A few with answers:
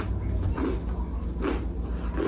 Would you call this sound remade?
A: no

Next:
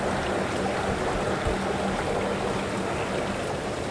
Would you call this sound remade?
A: no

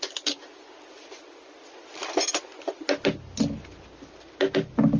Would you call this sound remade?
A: no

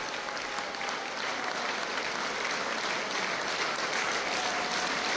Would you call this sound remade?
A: no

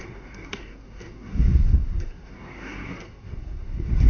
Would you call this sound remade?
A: yes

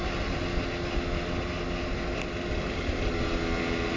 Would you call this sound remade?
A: no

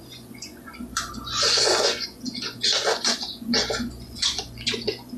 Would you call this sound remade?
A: yes